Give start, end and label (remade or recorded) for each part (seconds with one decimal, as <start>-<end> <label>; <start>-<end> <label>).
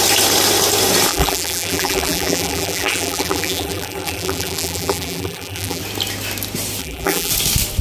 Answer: 0.0-1.1 recorded; 1.1-5.8 remade; 5.8-6.8 recorded; 6.8-7.3 remade; 7.3-7.8 recorded